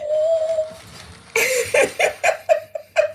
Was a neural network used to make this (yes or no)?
no